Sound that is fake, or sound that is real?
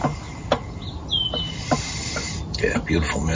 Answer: real